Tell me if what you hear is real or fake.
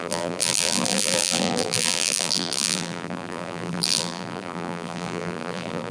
fake